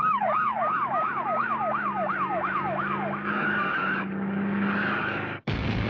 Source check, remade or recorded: remade